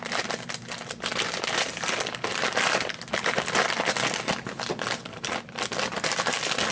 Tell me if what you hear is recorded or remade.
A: recorded